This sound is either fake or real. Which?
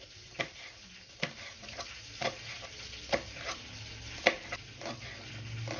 real